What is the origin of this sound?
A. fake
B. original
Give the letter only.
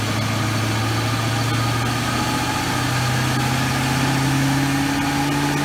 B